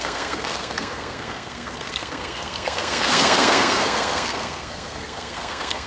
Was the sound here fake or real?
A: fake